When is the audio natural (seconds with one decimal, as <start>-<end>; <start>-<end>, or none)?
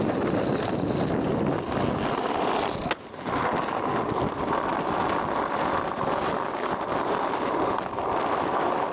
0.0-8.9